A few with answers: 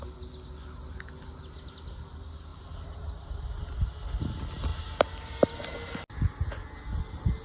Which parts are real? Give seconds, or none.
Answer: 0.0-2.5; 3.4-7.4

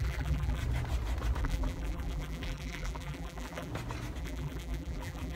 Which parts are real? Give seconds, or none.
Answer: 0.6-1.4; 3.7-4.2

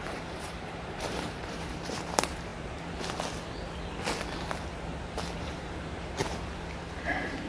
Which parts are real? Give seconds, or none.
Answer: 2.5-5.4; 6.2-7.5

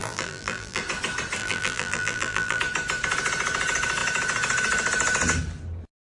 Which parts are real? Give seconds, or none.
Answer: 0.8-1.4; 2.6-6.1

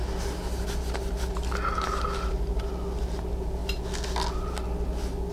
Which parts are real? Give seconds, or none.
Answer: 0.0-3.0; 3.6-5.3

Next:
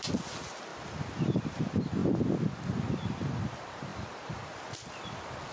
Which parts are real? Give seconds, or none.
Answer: 0.0-0.7; 1.6-3.9; 4.5-5.5